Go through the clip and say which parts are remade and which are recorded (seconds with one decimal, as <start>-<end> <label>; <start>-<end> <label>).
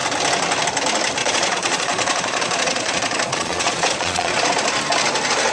0.0-1.2 recorded; 1.2-4.5 remade; 4.5-5.5 recorded